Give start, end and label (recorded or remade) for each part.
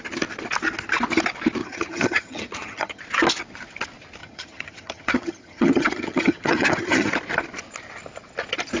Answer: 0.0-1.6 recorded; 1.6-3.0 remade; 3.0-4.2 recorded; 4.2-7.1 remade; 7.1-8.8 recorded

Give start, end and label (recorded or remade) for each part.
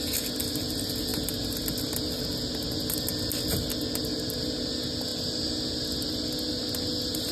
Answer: 0.0-7.3 recorded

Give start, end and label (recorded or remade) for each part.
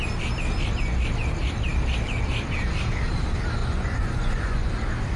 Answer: 0.0-3.6 recorded; 3.6-4.7 remade; 4.7-5.2 recorded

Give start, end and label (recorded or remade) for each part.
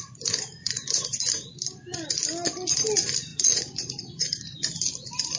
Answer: 0.0-0.6 recorded; 0.6-1.2 remade; 1.2-3.3 recorded; 3.3-4.4 remade; 4.4-5.4 recorded